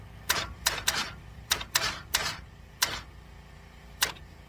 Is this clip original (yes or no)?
no